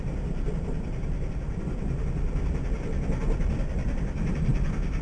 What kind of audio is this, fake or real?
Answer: real